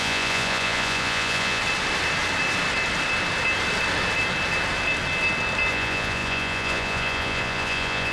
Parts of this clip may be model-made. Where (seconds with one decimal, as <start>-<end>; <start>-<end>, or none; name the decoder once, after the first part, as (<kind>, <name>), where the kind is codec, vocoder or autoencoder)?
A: 0.0-1.6 (vocoder, Vocos); 5.7-8.1